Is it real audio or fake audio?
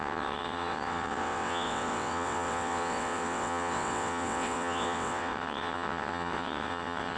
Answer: fake